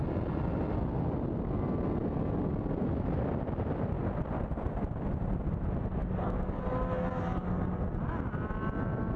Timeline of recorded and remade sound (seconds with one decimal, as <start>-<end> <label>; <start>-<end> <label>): 0.0-6.0 recorded; 6.0-6.6 remade; 6.6-9.2 recorded

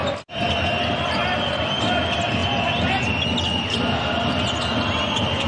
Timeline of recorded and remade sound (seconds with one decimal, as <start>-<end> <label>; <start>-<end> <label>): 0.0-5.5 recorded